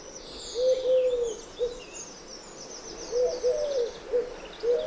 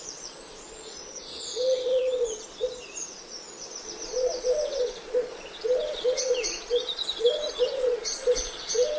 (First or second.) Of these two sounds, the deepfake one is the second